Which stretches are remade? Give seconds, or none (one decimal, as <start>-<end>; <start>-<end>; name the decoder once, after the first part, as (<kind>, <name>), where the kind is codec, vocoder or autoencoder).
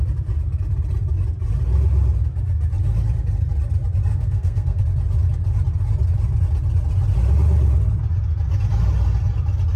4.1-4.8 (codec, SNAC)